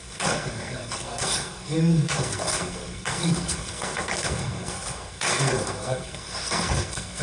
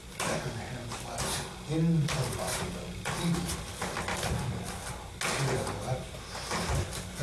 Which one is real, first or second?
second